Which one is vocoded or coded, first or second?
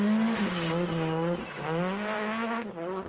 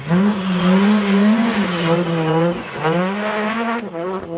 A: second